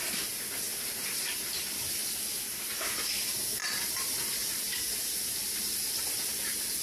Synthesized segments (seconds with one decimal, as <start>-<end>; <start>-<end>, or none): 3.6-6.1